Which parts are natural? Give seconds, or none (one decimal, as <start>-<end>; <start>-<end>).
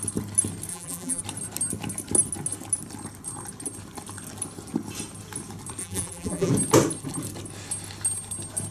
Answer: 0.0-0.7; 1.2-5.8; 6.5-8.7